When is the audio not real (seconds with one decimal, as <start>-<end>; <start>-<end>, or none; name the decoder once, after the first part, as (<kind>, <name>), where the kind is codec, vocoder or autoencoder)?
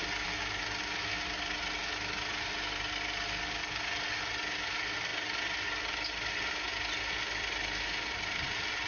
none